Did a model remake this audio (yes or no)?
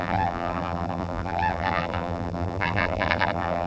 yes